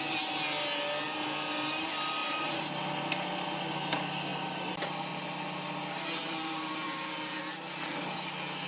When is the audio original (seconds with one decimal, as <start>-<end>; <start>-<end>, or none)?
0.0-2.2; 2.8-6.2; 7.4-8.7